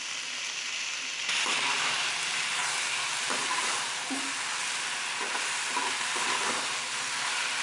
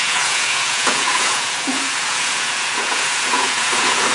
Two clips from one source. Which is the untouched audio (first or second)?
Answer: first